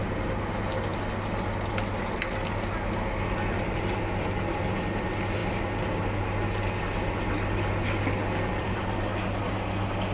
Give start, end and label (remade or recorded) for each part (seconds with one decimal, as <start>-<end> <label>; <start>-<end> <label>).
0.0-10.1 recorded